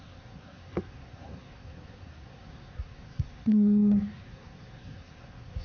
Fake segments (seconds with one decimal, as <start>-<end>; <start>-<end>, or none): 0.0-5.6